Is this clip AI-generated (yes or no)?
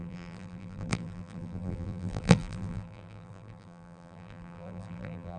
yes